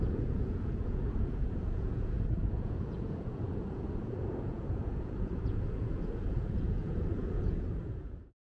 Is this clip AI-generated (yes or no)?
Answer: yes